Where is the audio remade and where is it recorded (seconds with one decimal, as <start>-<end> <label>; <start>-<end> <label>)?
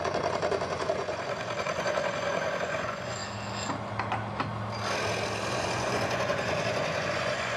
0.0-3.2 remade; 3.2-5.5 recorded; 5.5-7.6 remade